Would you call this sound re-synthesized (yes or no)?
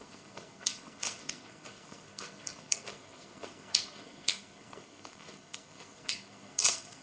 yes